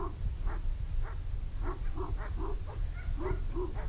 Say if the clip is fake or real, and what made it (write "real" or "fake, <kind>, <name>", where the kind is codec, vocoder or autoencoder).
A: real